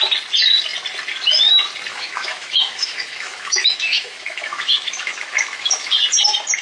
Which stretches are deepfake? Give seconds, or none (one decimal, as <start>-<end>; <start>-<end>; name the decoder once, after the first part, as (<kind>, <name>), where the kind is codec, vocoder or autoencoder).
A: 1.9-5.9 (autoencoder, DAC-VAE)